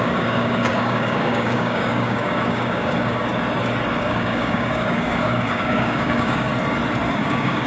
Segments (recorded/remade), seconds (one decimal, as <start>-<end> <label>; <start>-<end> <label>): 0.0-3.3 remade; 3.3-4.0 recorded; 4.0-6.5 remade; 6.5-7.1 recorded; 7.1-7.7 remade